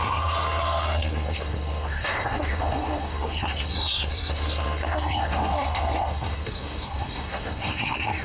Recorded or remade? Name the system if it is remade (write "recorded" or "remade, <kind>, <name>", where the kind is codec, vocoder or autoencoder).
remade, codec, SNAC